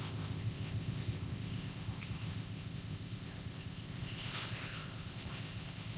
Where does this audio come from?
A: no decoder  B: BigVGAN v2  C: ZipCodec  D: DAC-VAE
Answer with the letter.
C